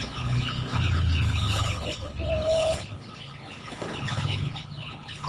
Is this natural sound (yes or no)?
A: no